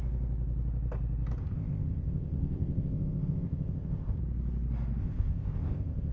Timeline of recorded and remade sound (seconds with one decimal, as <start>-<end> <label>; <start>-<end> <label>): 0.0-1.4 recorded; 1.4-4.2 remade; 4.2-5.0 recorded; 5.0-6.1 remade